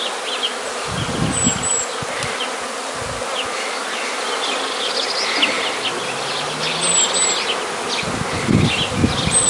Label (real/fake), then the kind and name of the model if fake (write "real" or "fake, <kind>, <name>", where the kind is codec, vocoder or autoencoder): real